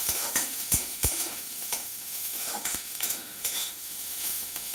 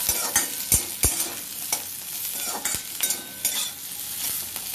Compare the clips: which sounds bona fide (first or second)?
second